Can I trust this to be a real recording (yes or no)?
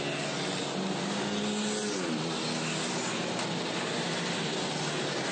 yes